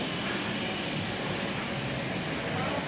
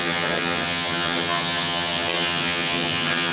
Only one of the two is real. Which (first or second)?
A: first